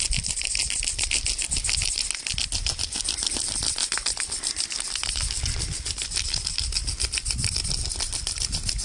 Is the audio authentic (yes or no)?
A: yes